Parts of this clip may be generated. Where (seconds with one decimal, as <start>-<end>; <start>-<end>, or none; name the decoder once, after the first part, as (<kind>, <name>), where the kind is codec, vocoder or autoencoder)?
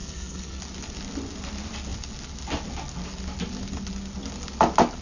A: 0.0-0.6 (codec, SNAC)